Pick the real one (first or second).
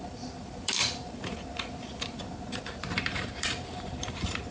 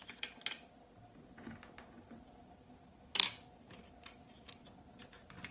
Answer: second